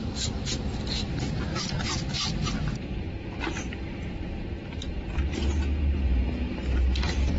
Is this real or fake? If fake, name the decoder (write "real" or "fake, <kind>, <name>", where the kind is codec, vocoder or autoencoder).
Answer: real